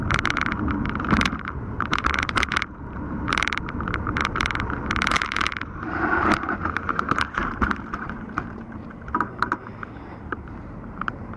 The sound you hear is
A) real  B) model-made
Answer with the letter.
B